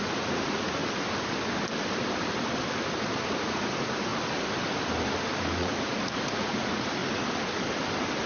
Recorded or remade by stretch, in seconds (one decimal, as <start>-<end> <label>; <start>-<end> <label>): 0.0-0.8 remade; 0.8-3.4 recorded; 3.4-4.1 remade; 4.1-5.6 recorded; 5.6-7.0 remade; 7.0-8.3 recorded